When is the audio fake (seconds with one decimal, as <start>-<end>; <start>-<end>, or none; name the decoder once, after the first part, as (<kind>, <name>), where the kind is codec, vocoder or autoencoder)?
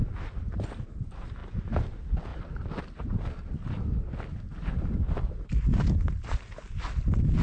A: none